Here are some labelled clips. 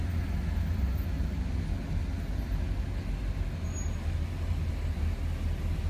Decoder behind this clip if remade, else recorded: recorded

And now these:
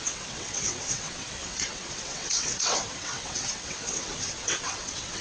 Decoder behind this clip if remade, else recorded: remade, vocoder, WaveNeXt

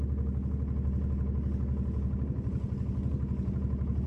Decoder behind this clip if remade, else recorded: recorded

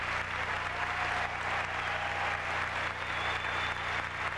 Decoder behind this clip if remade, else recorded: recorded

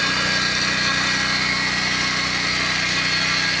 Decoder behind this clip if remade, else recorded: recorded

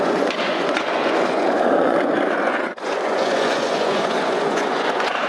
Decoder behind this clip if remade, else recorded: remade, vocoder, Vocos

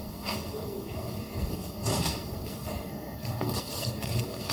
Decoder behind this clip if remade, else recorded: remade, codec, SNAC